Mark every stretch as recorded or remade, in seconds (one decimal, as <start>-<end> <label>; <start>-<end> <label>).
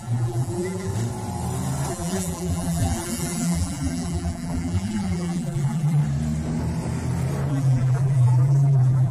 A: 0.0-0.9 remade; 0.9-1.9 recorded; 1.9-6.0 remade; 6.0-7.5 recorded; 7.5-9.1 remade